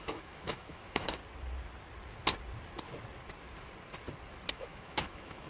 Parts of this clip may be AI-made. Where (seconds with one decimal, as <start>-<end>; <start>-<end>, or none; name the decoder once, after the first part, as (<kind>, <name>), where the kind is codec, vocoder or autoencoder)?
0.0-1.2 (autoencoder, DAC-VAE); 4.5-5.5